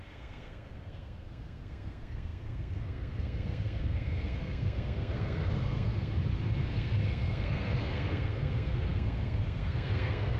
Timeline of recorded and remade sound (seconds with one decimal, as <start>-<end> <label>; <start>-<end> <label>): 0.0-6.1 remade; 6.1-6.6 recorded; 6.6-10.4 remade